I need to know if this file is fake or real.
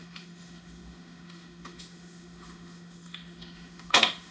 fake